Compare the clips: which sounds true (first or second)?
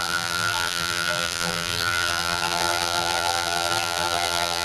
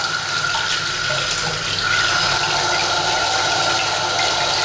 second